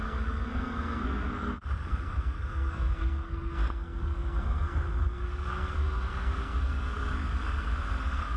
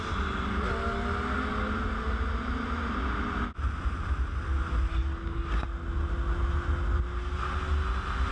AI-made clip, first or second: first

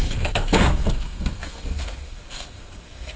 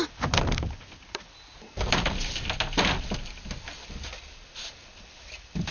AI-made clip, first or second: first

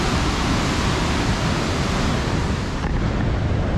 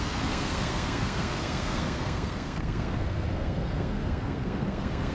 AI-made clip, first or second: second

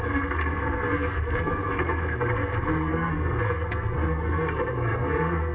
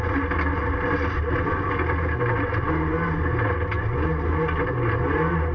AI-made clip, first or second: first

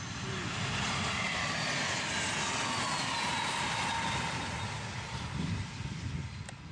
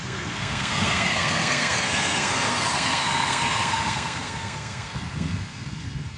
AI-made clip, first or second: second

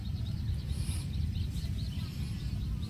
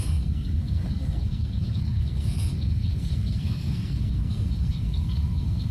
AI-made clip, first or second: second